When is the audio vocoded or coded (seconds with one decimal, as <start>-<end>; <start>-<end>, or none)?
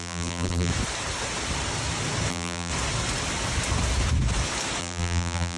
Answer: 0.0-0.7; 2.3-2.7; 4.8-5.6